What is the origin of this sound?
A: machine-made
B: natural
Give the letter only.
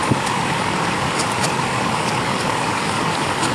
A